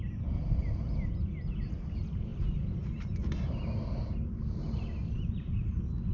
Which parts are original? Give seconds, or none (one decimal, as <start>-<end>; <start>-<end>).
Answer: 0.0-6.1